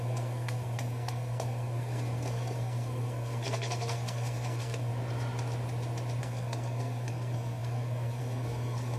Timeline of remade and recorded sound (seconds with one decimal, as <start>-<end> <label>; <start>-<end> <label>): 0.0-4.9 remade; 4.9-6.2 recorded; 6.2-9.0 remade